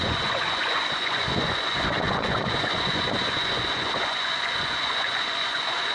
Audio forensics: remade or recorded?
remade